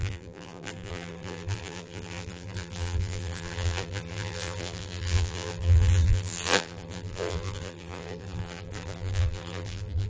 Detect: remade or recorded remade